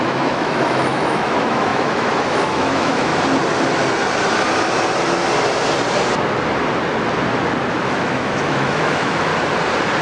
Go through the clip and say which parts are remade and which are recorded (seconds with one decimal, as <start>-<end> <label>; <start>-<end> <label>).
0.0-3.1 remade; 3.1-7.7 recorded; 7.7-9.3 remade; 9.3-10.0 recorded

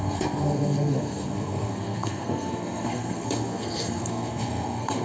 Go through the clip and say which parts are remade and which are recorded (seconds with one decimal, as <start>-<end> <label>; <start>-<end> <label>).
0.0-5.0 remade

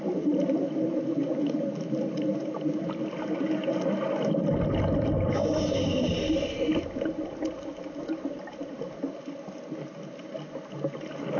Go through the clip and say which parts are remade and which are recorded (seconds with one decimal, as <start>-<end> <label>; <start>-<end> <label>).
0.0-6.7 recorded; 6.7-9.4 remade; 9.4-11.4 recorded

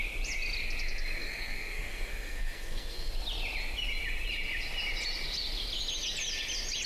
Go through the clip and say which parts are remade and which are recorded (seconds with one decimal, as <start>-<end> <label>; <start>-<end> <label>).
0.0-1.2 recorded; 1.2-3.1 remade; 3.1-6.9 recorded

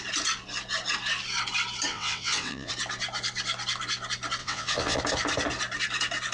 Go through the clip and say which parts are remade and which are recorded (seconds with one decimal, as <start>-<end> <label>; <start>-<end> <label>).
0.0-1.9 recorded; 1.9-2.7 remade; 2.7-4.4 recorded; 4.4-5.0 remade; 5.0-6.3 recorded

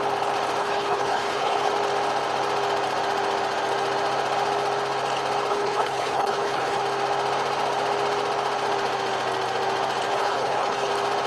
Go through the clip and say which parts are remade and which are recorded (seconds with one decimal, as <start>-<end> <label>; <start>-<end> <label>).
0.0-0.6 recorded; 0.6-1.7 remade; 1.7-5.5 recorded; 5.5-6.8 remade; 6.8-10.1 recorded; 10.1-10.9 remade; 10.9-11.3 recorded